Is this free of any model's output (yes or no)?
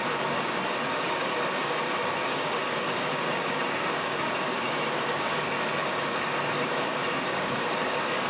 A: no